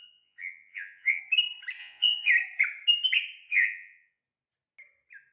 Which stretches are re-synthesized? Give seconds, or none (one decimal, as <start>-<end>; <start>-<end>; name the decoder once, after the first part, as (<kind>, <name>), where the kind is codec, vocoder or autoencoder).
0.0-1.2 (vocoder, Vocos); 1.8-2.3; 3.5-4.2